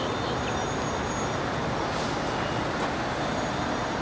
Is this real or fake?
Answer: real